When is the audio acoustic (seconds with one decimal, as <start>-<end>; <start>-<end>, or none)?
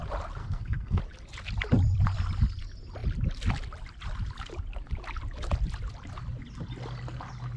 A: 0.0-0.4; 1.0-7.6